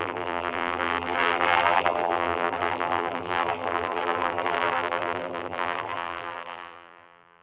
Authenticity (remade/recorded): remade